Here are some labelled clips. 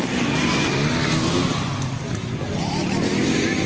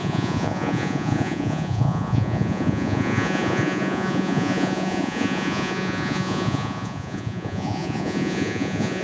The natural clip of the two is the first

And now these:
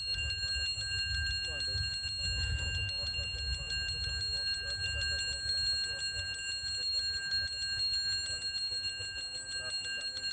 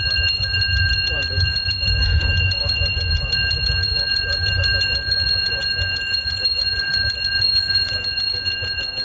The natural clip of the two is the first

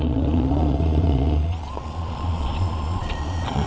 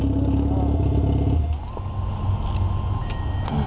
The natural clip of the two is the second